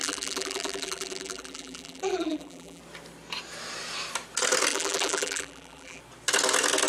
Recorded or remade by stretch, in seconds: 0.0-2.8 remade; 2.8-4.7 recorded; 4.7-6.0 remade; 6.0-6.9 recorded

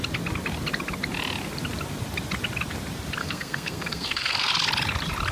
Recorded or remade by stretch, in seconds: 0.0-3.2 recorded; 3.2-4.5 remade; 4.5-5.3 recorded

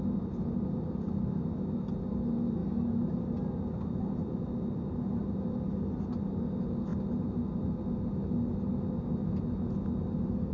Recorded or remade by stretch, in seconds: 0.0-10.5 recorded

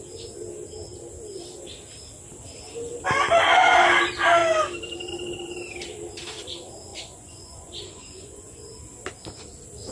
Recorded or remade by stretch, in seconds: 0.0-6.9 recorded; 6.9-8.7 remade; 8.7-9.9 recorded

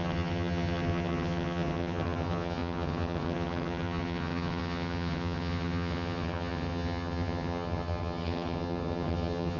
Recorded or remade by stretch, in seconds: 0.0-9.6 remade

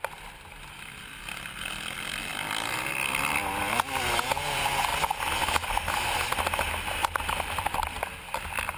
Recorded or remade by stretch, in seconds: 0.0-7.0 recorded; 7.0-8.2 remade; 8.2-8.8 recorded

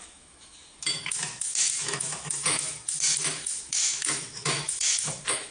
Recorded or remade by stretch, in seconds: 0.0-5.5 remade